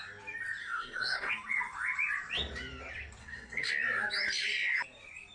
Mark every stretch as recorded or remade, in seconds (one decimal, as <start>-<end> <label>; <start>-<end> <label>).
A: 0.0-0.6 recorded; 0.6-1.3 remade; 1.3-3.2 recorded; 3.2-3.7 remade; 3.7-5.3 recorded